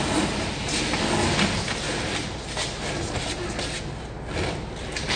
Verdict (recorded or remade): recorded